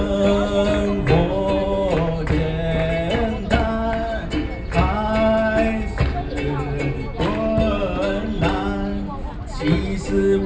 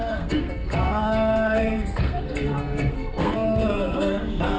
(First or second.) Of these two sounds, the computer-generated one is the second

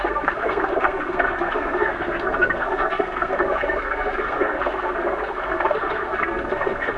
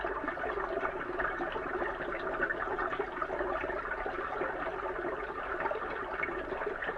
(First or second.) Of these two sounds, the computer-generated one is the first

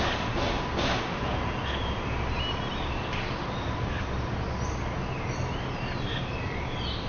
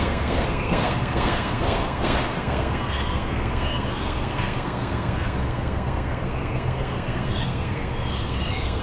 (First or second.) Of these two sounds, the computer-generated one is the second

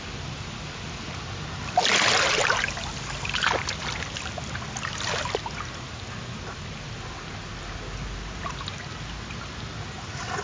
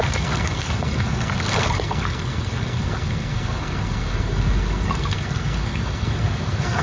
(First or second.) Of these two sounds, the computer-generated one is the second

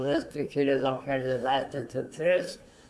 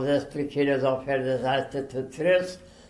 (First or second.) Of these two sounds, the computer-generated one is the first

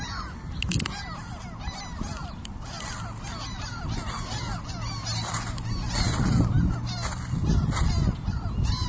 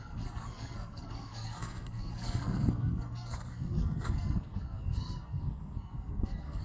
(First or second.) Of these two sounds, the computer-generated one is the second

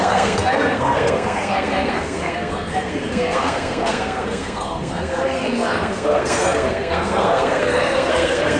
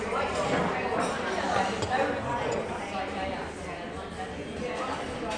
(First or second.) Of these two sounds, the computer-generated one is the first